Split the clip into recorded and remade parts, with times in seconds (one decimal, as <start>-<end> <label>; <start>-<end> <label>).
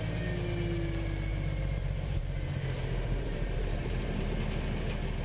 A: 0.0-1.3 recorded; 1.3-4.4 remade; 4.4-5.2 recorded